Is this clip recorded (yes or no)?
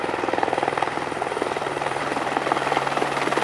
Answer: no